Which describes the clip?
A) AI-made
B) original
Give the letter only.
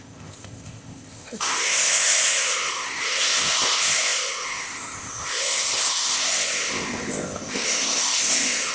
A